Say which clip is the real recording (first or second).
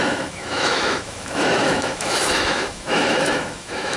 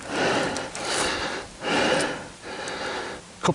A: second